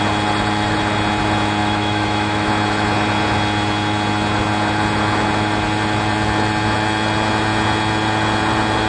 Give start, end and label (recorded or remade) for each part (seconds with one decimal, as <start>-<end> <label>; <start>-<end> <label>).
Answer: 0.0-1.6 recorded; 1.6-2.5 remade; 2.5-8.9 recorded